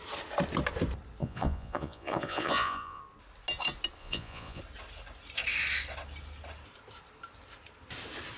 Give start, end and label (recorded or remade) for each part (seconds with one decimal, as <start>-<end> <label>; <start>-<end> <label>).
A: 0.0-1.2 recorded; 1.2-3.0 remade; 3.0-4.0 recorded; 4.0-4.6 remade; 4.6-8.4 recorded